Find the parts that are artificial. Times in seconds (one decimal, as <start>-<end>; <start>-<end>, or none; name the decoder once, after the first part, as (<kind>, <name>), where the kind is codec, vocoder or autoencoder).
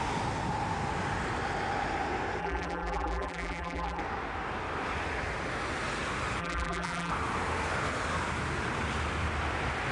2.4-4.0 (vocoder, BigVGAN v2); 6.4-7.1